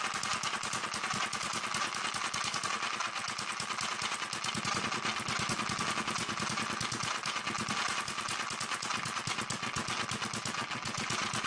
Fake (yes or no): no